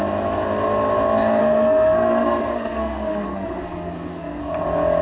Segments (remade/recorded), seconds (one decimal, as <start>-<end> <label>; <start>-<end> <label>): 0.0-1.4 recorded; 1.4-4.4 remade; 4.4-5.0 recorded